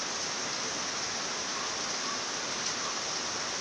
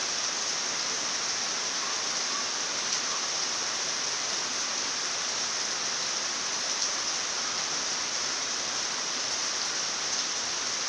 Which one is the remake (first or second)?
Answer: second